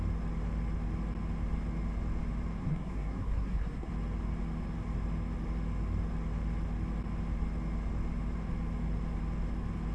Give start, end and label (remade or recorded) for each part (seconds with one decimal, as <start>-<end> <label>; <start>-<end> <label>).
0.0-2.6 recorded; 2.6-3.9 remade; 3.9-9.9 recorded